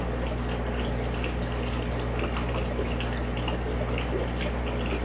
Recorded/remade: recorded